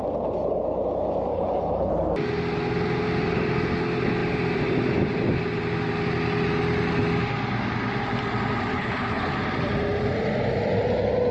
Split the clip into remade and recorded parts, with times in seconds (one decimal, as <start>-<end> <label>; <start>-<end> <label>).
0.0-1.3 recorded; 1.3-1.9 remade; 1.9-8.7 recorded; 8.7-9.3 remade; 9.3-11.3 recorded